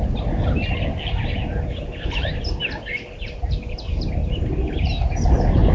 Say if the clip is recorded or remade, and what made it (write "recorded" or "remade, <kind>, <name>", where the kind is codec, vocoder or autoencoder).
recorded